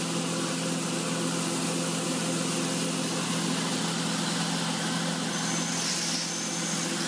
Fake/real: real